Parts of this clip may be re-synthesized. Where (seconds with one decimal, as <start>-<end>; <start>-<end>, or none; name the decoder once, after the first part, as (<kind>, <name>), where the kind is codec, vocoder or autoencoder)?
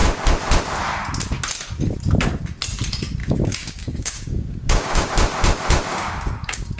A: 3.2-5.1 (codec, DAC); 5.9-6.8